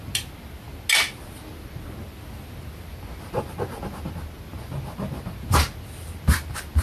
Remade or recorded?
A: recorded